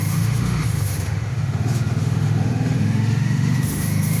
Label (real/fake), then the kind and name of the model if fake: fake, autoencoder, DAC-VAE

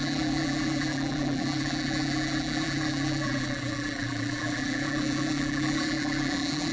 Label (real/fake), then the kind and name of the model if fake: fake, vocoder, BigVGAN v2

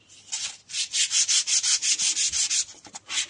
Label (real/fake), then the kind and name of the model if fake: real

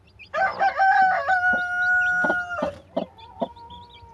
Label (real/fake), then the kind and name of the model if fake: real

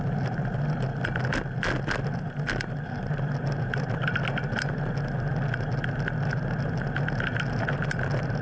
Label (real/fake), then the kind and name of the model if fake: real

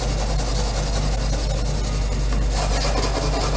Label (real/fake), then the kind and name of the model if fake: real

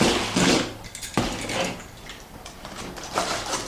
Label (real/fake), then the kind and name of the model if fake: real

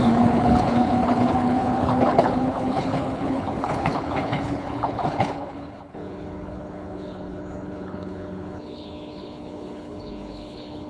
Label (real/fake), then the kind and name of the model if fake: fake, codec, HILCodec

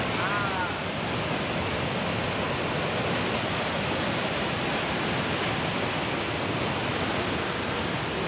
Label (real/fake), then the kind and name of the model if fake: real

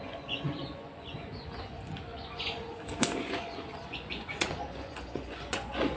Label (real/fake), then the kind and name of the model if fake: fake, vocoder, Vocos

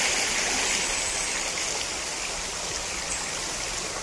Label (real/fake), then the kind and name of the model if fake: real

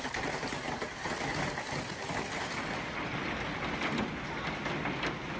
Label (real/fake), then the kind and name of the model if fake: real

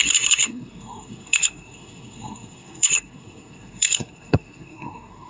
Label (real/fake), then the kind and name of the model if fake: fake, codec, SNAC